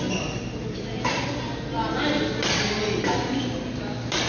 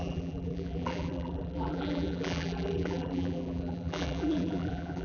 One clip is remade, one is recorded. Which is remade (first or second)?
second